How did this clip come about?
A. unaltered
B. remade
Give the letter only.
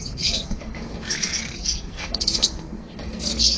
B